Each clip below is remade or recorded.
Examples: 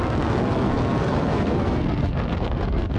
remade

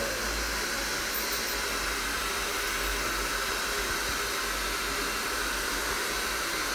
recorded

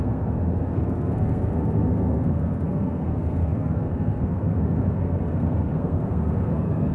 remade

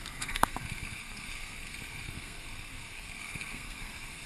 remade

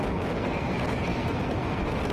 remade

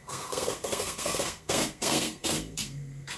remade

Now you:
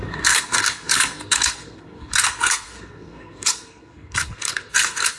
remade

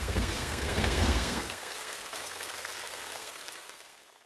remade